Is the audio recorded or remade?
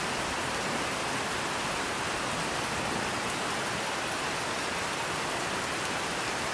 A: recorded